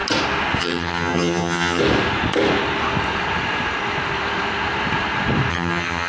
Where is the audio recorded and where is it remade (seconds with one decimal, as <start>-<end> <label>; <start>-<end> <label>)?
0.0-0.6 recorded; 0.6-1.8 remade; 1.8-5.5 recorded; 5.5-6.1 remade